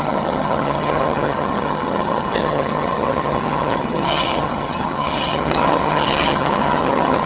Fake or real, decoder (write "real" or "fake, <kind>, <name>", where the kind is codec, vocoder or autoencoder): fake, vocoder, HiFi-GAN